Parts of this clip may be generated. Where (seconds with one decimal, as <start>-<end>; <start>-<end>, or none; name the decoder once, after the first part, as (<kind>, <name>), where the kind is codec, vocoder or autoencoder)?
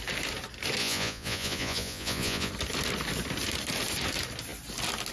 0.8-2.5 (vocoder, Vocos)